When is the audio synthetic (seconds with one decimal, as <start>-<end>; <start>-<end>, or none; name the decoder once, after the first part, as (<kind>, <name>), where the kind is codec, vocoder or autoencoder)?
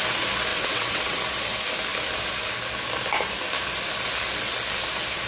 0.5-1.2 (vocoder, WaveNeXt)